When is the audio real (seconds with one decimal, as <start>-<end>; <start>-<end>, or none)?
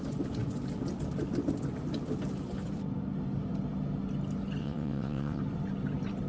0.0-4.6; 5.4-6.3